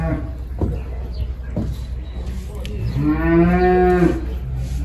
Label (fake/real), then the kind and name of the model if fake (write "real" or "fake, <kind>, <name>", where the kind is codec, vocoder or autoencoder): real